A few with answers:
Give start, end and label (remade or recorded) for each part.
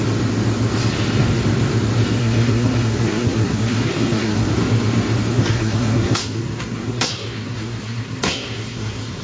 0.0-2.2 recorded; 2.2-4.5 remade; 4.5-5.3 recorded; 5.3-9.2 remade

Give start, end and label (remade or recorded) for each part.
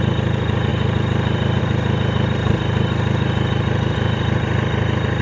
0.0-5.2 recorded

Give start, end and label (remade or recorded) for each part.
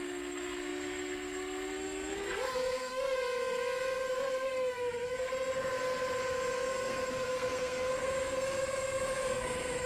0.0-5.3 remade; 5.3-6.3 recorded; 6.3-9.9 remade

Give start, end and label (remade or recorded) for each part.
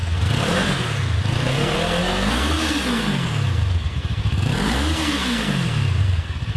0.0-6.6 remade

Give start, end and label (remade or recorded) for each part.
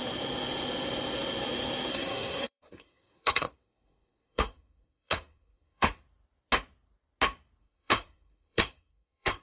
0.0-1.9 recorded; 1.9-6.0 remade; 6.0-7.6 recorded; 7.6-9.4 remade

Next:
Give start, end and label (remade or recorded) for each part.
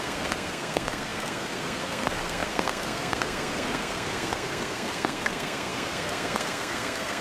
0.0-7.2 remade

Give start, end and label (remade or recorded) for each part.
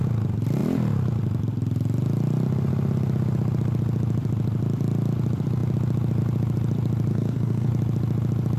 0.0-7.1 recorded; 7.1-7.7 remade; 7.7-8.6 recorded